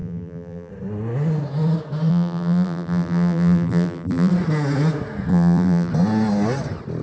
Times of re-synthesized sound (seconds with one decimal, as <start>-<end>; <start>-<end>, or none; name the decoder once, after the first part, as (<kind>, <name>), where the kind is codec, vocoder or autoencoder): 0.0-0.7 (vocoder, BigVGAN v2); 2.1-4.3; 5.3-5.9